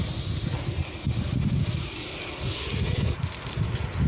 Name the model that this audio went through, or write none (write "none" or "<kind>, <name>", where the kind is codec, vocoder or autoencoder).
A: none